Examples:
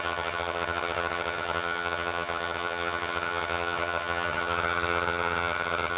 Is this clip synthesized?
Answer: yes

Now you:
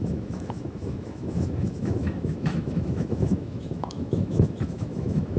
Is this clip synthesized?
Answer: yes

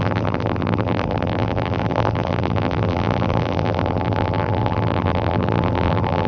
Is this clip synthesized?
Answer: yes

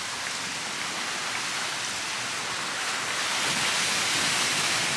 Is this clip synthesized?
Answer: no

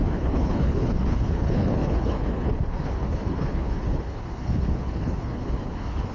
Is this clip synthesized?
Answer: yes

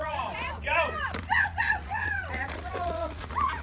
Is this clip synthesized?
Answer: yes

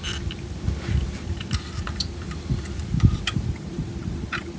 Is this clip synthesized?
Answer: yes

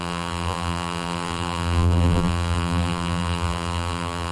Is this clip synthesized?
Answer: yes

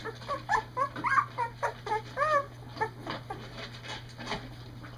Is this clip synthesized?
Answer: no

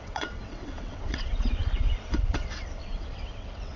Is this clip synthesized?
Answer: yes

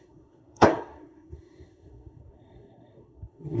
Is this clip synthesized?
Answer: yes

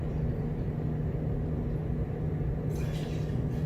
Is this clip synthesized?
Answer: no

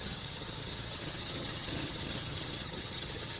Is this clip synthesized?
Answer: yes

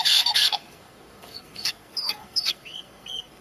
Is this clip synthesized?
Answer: yes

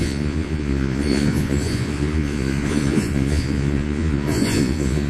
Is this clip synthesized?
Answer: yes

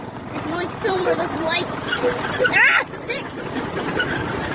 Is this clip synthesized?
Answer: yes